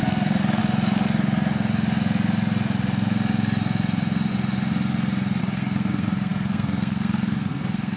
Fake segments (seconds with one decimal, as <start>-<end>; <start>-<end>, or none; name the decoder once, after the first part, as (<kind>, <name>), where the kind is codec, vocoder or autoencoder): 0.0-0.6 (codec, SNAC); 5.4-8.0